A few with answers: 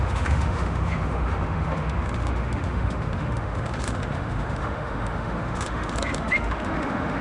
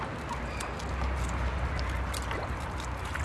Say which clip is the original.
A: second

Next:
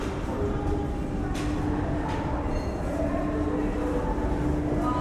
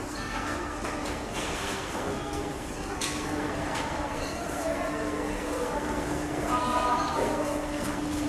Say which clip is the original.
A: first